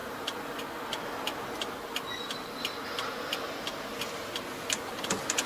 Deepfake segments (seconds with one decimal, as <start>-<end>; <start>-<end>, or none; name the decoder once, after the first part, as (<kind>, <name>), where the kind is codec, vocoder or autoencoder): none